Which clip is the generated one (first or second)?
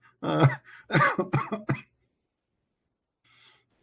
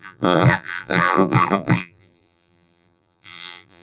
second